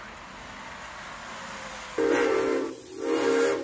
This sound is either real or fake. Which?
real